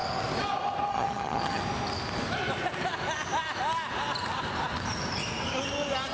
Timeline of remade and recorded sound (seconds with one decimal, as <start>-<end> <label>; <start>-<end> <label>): 0.0-0.9 recorded; 0.9-1.6 remade; 1.6-6.1 recorded